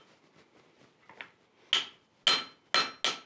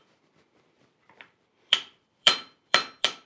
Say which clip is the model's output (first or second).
second